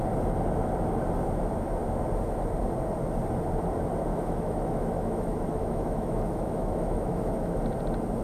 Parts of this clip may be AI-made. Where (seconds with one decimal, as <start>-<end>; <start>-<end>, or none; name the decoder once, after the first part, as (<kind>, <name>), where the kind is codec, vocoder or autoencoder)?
4.1-7.6 (autoencoder, DAC-VAE)